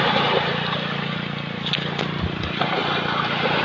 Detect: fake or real real